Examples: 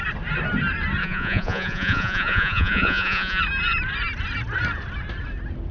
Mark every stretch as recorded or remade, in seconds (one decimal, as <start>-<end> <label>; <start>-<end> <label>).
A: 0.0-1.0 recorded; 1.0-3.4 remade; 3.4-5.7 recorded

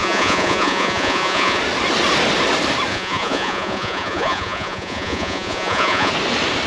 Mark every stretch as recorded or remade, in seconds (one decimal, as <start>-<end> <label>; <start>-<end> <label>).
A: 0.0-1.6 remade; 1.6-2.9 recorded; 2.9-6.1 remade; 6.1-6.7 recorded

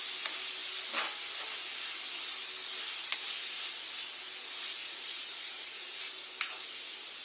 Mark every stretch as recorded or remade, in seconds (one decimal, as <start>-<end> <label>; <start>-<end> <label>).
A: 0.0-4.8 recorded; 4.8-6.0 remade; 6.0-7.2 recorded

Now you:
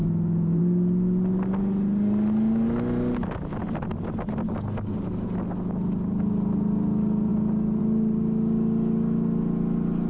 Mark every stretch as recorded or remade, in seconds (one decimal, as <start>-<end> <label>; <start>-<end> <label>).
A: 0.0-0.6 remade; 0.6-10.1 recorded